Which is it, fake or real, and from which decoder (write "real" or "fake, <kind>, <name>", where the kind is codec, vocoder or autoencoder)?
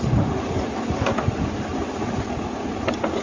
real